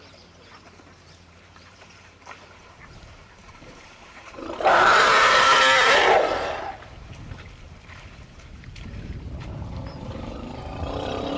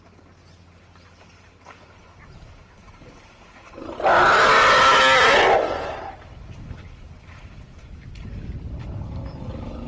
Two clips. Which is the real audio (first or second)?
second